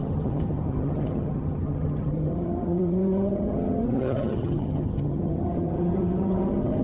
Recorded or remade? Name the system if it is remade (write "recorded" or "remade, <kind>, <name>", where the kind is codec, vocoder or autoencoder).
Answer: remade, vocoder, HiFi-GAN